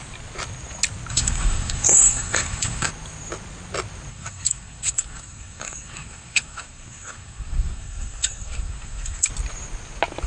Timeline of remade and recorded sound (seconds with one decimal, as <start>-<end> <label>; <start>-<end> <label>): 0.0-1.1 recorded; 1.1-2.9 remade; 2.9-4.1 recorded; 4.1-9.3 remade; 9.3-10.3 recorded